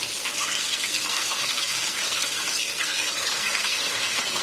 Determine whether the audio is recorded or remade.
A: remade